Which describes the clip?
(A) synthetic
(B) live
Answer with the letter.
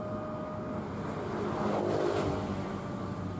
B